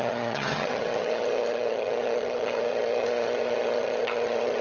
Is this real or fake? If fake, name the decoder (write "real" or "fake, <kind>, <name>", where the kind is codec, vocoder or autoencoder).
fake, vocoder, HiFi-GAN